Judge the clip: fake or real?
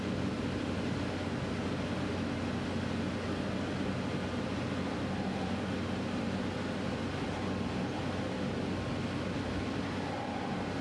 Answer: real